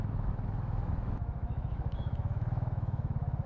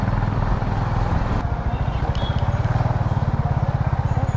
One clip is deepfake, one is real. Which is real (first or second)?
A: second